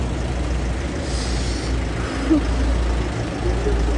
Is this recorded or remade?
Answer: recorded